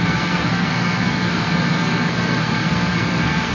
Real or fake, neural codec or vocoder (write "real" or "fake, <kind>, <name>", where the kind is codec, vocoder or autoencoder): fake, codec, SNAC